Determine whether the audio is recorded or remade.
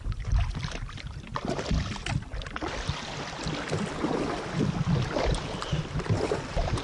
recorded